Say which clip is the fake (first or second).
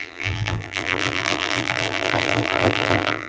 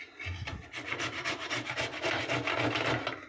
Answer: first